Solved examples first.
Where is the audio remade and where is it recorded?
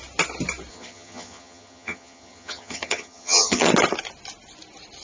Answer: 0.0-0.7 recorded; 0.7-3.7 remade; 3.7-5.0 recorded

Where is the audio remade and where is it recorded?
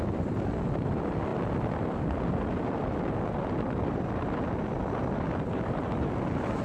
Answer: 0.0-6.6 recorded